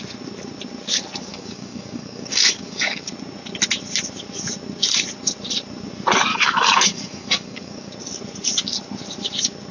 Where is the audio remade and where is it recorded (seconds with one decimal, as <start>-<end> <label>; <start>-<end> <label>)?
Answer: 0.0-1.3 recorded; 1.3-3.1 remade; 3.1-6.3 recorded; 6.3-7.9 remade; 7.9-9.7 recorded